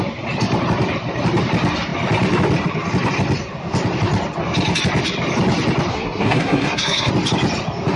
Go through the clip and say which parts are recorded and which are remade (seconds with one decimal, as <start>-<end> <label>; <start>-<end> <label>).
0.0-5.9 recorded; 5.9-7.1 remade; 7.1-8.0 recorded